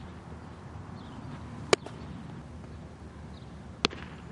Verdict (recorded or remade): recorded